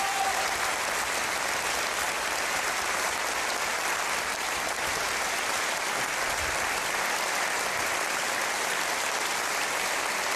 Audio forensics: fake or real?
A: real